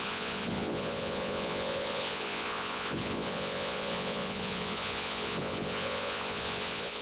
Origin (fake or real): fake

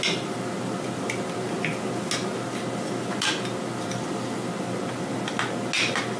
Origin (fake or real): real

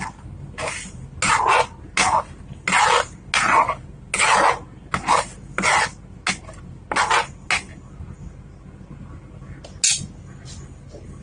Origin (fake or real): real